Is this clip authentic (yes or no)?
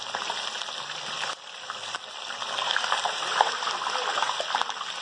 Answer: no